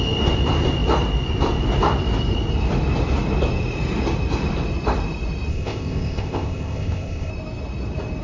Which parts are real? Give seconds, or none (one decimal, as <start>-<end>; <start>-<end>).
0.0-5.5; 7.3-8.2